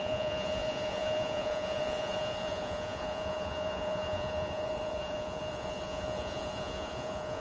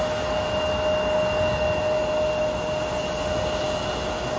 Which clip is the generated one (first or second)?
first